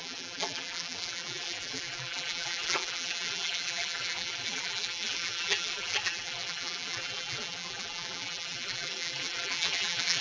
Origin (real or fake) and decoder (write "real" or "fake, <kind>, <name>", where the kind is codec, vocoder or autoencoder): fake, vocoder, BigVGAN v2